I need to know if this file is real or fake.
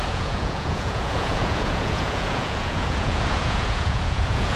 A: fake